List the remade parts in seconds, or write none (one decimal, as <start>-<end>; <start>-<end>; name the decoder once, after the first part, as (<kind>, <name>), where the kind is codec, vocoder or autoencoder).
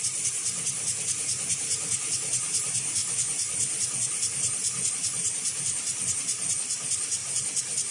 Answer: none